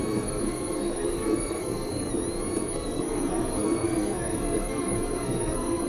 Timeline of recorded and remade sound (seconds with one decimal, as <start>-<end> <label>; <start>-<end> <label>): 0.0-2.1 remade; 2.1-2.6 recorded; 2.6-5.9 remade